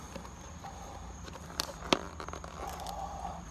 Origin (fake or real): real